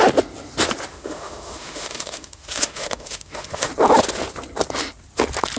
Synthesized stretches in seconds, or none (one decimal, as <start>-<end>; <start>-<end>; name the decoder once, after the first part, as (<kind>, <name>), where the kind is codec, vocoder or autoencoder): 0.9-3.7 (autoencoder, DAC-VAE)